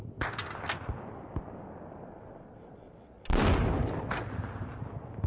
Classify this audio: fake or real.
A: real